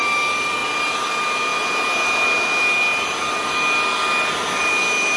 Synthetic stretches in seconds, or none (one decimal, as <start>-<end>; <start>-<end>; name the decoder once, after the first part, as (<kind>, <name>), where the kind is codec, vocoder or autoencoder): none